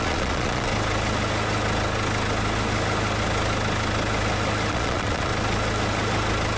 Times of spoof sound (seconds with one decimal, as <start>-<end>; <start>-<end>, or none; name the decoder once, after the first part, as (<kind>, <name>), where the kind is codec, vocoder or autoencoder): 0.0-0.7 (vocoder, Vocos); 4.7-5.3

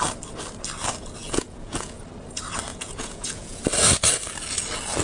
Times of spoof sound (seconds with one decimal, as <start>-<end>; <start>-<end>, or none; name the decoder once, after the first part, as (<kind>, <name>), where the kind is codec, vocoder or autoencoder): 1.2-2.0 (vocoder, Vocos); 2.7-3.6

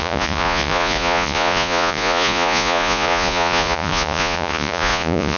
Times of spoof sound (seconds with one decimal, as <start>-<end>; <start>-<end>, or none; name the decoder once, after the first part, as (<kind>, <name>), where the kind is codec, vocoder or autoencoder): 0.0-5.4 (vocoder, Vocos)

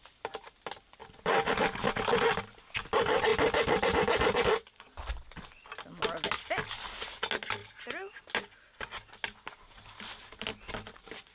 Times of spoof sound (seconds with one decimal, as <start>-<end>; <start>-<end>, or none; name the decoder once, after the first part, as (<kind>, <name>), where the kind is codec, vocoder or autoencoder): none

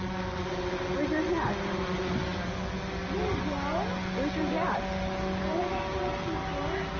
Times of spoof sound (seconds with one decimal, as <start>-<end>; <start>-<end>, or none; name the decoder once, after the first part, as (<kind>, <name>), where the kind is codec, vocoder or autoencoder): none

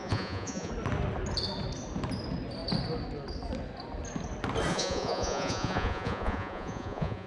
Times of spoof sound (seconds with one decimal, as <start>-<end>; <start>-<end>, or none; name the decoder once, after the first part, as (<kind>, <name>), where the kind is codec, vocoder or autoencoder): 0.0-0.7 (vocoder, Vocos); 4.7-7.3